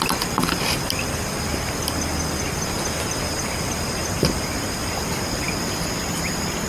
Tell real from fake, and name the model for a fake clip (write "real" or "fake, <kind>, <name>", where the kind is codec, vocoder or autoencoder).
fake, vocoder, BigVGAN v2